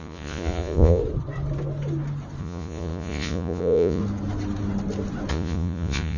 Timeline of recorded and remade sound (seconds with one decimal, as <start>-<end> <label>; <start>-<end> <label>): 0.0-1.0 remade; 1.0-2.4 recorded; 2.4-4.0 remade; 4.0-5.3 recorded; 5.3-6.2 remade